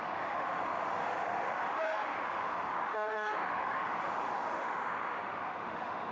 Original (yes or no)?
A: no